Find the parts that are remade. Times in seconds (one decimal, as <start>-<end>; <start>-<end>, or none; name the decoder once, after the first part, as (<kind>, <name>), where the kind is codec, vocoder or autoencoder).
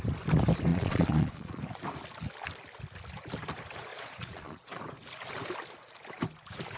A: 0.7-1.6 (vocoder, Vocos); 3.9-4.8